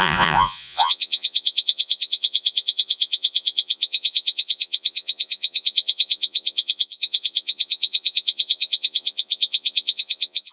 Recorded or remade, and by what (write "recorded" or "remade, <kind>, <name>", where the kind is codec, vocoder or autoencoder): remade, vocoder, Vocos